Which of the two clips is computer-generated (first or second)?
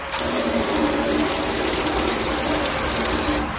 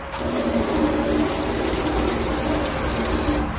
first